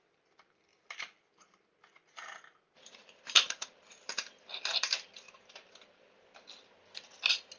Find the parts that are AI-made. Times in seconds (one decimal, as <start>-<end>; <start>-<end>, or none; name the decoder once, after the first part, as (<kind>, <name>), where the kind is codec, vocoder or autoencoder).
none